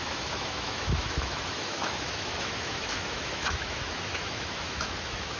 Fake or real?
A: fake